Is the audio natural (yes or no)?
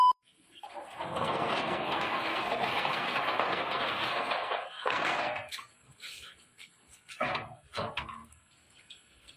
no